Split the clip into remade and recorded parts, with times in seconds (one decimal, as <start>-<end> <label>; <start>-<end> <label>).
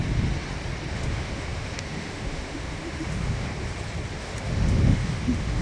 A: 0.0-0.9 recorded; 0.9-3.5 remade; 3.5-4.2 recorded; 4.2-5.6 remade